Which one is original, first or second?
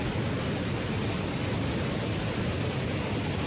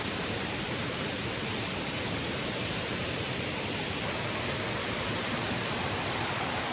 first